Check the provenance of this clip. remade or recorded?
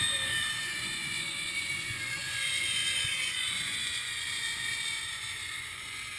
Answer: remade